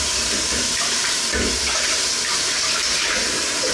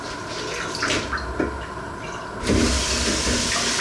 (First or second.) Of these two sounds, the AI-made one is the first